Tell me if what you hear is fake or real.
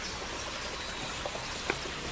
real